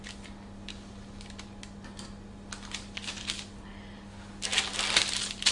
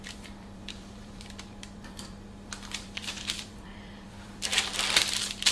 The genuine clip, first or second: first